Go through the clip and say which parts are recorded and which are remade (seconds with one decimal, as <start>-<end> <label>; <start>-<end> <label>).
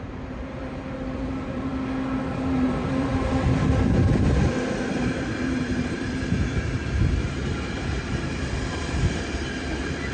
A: 0.0-1.7 remade; 1.7-2.2 recorded; 2.2-3.1 remade; 3.1-4.9 recorded; 4.9-10.1 remade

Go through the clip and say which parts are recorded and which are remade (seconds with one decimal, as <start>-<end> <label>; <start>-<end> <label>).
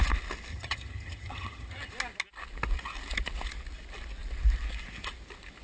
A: 0.0-0.5 recorded; 0.5-1.9 remade; 1.9-5.6 recorded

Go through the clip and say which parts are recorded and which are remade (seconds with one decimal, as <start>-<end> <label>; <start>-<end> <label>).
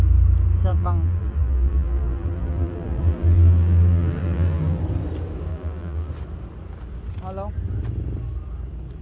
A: 0.0-0.7 recorded; 0.7-4.8 remade; 4.8-5.5 recorded; 5.5-6.1 remade; 6.1-9.0 recorded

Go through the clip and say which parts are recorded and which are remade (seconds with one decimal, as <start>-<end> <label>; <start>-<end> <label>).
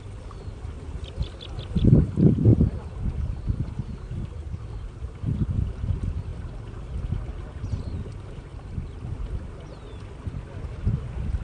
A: 0.0-11.4 recorded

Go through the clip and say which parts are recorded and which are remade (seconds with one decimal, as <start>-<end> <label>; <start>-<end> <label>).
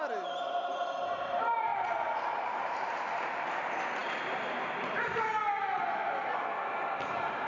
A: 0.0-1.7 recorded; 1.7-3.6 remade; 3.6-7.5 recorded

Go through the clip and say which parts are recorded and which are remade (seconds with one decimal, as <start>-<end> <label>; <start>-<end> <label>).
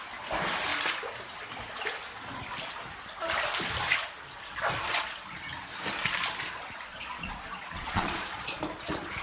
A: 0.0-6.9 recorded; 6.9-8.6 remade; 8.6-9.2 recorded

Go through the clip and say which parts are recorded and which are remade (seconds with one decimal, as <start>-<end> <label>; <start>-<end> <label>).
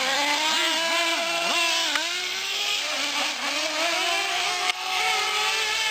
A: 0.0-2.2 recorded; 2.2-2.8 remade; 2.8-4.3 recorded; 4.3-5.0 remade; 5.0-5.9 recorded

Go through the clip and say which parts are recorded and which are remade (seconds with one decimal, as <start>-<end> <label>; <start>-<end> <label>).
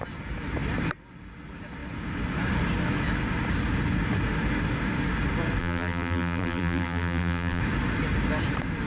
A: 0.0-5.6 recorded; 5.6-7.6 remade; 7.6-8.9 recorded